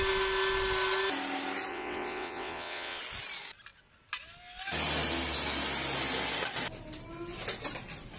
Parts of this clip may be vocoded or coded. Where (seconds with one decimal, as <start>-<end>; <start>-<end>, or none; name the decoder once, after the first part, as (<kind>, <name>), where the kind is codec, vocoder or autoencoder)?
1.7-3.0 (vocoder, WaveNeXt)